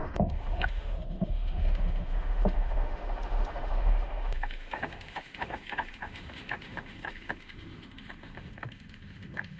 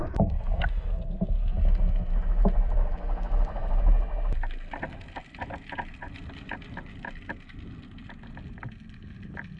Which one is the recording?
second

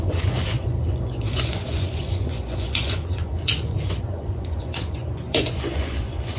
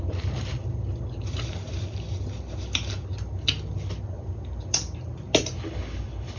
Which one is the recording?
second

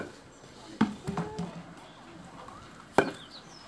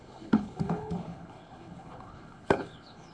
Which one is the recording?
first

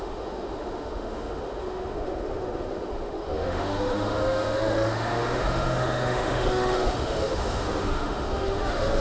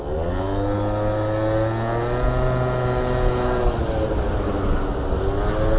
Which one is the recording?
second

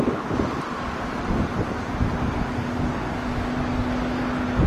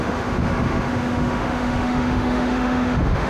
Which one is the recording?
first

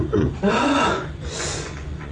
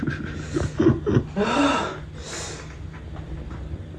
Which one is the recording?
second